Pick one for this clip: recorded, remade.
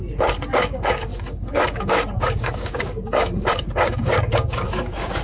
remade